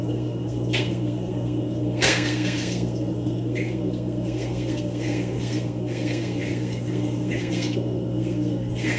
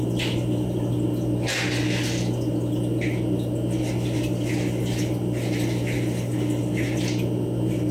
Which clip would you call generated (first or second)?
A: first